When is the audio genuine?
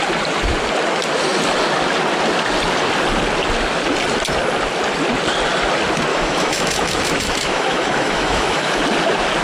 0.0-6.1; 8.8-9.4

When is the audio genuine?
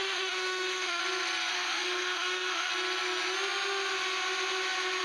1.0-1.5; 2.7-5.0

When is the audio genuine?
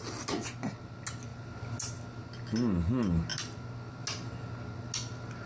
0.0-5.5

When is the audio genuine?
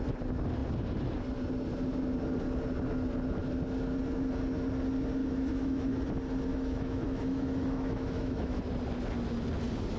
0.0-5.2; 6.0-6.5; 8.6-10.0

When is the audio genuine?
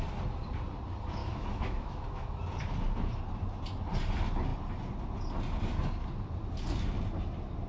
0.0-1.2; 2.4-7.7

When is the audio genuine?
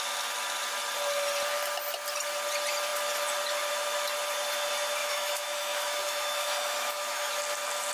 0.0-5.0; 7.3-7.9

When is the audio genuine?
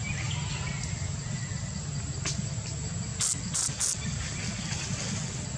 0.0-5.6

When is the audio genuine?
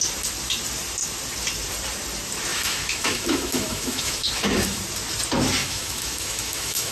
0.0-2.5; 4.8-5.6